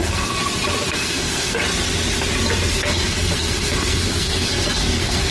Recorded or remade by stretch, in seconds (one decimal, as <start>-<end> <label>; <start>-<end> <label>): 0.0-0.4 remade; 0.4-0.9 recorded; 0.9-1.6 remade; 1.6-2.7 recorded; 2.7-5.3 remade

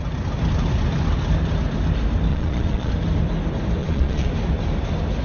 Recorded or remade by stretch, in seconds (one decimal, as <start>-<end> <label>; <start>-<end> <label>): 0.0-2.3 recorded; 2.3-2.9 remade; 2.9-3.8 recorded; 3.8-4.3 remade; 4.3-5.2 recorded

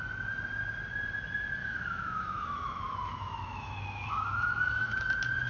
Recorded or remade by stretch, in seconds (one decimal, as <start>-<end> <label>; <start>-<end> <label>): 0.0-1.6 recorded; 1.6-4.9 remade; 4.9-5.5 recorded

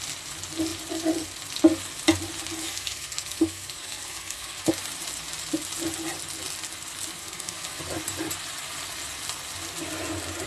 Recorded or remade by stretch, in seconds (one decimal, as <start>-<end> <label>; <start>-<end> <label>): 0.0-2.6 recorded; 2.6-4.7 remade; 4.7-7.2 recorded; 7.2-7.8 remade; 7.8-10.5 recorded

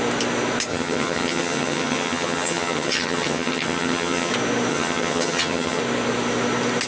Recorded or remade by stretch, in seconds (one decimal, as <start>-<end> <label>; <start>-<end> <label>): 0.0-0.7 recorded; 0.7-4.3 remade; 4.3-4.7 recorded; 4.7-5.8 remade; 5.8-6.9 recorded

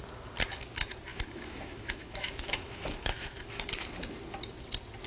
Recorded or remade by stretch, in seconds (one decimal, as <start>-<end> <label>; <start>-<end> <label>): 0.0-1.1 recorded; 1.1-3.7 remade; 3.7-5.1 recorded

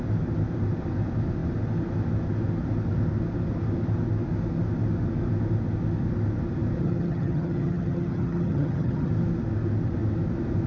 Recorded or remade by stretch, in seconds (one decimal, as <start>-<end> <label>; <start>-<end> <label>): 0.0-6.8 recorded; 6.8-9.1 remade; 9.1-10.7 recorded

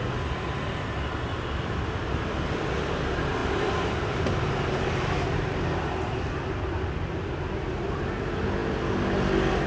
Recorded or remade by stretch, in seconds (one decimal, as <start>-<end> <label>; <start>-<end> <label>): 0.0-3.4 recorded; 3.4-5.8 remade; 5.8-9.7 recorded